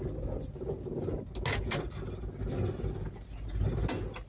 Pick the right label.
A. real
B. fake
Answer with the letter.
A